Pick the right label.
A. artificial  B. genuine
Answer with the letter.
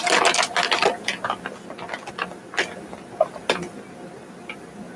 B